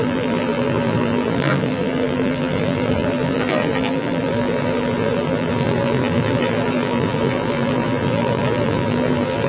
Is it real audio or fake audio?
fake